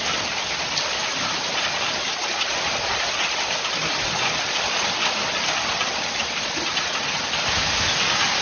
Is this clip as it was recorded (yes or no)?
yes